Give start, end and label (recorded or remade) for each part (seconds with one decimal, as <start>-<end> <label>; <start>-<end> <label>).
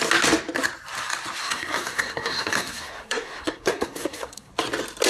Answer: 0.0-1.4 recorded; 1.4-4.5 remade; 4.5-5.1 recorded